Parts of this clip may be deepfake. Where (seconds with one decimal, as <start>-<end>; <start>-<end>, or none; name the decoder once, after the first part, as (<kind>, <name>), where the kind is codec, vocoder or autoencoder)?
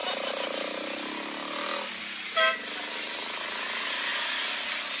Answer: none